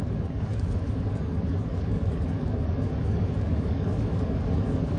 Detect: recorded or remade remade